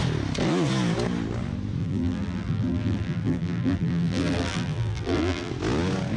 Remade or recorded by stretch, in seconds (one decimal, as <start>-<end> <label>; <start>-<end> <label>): 0.0-1.8 recorded; 1.8-5.5 remade; 5.5-6.2 recorded